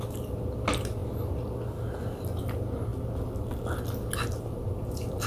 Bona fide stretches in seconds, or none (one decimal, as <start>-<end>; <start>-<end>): 0.0-5.3